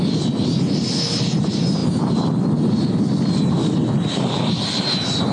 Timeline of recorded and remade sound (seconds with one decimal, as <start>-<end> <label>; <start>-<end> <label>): 0.0-5.3 recorded